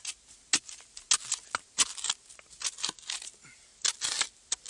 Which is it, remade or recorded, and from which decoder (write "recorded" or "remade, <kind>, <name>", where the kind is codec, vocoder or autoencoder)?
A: recorded